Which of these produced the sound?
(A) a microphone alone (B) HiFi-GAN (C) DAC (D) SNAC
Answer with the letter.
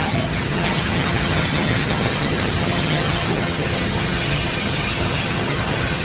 B